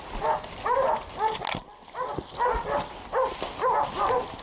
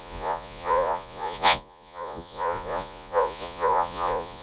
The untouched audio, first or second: first